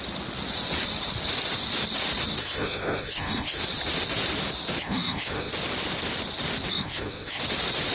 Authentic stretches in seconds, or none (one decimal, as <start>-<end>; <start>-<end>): 0.0-2.4; 3.6-4.8; 5.5-6.7; 7.4-7.9